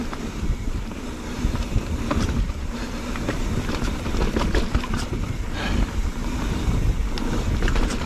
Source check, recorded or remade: remade